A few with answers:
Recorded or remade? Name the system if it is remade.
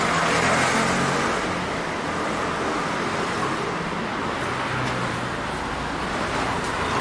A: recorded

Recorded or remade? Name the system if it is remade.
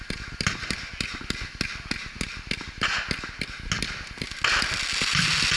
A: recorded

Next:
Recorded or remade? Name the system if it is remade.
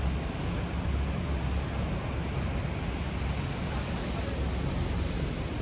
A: recorded